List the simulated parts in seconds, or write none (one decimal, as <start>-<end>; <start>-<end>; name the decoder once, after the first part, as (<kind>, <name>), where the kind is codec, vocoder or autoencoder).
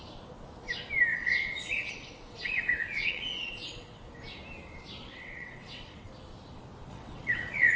1.1-4.1 (vocoder, WaveNeXt); 5.1-6.1; 6.9-7.8